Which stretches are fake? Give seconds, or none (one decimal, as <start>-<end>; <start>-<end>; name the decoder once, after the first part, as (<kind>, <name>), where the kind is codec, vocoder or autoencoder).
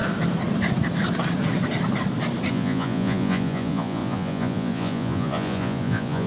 2.5-6.3 (vocoder, Vocos)